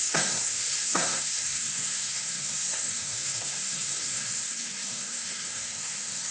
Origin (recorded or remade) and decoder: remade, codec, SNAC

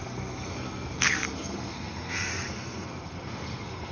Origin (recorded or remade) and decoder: remade, codec, SNAC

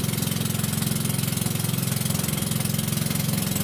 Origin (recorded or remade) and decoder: recorded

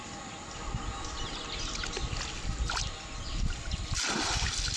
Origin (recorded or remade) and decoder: recorded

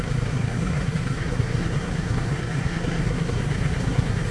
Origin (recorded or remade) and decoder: remade, codec, SNAC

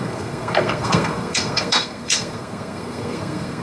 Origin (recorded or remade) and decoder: remade, codec, SNAC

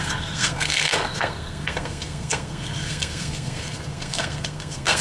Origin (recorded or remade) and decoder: remade, codec, SNAC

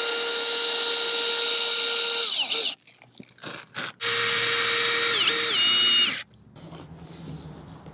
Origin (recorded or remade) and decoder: recorded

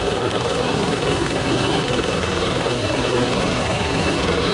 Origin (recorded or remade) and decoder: remade, codec, SNAC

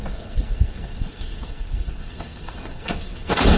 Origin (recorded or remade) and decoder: remade, codec, SNAC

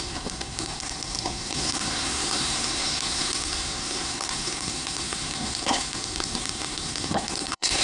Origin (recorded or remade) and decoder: remade, codec, SNAC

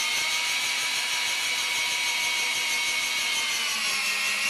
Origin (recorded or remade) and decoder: recorded